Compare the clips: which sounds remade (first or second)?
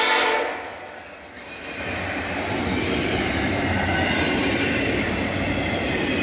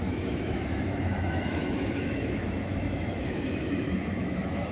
second